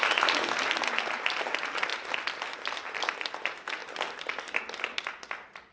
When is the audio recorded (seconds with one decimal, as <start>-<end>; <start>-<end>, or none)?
0.0-5.7